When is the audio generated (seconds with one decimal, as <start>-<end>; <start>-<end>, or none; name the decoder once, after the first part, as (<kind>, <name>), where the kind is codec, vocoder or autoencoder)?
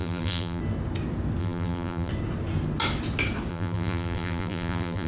0.0-0.6 (vocoder, BigVGAN v2); 1.4-2.1; 3.5-5.1